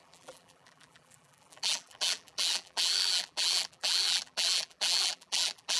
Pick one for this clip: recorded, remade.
remade